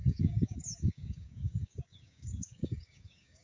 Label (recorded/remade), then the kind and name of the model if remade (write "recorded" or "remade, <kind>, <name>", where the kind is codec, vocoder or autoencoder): remade, codec, DAC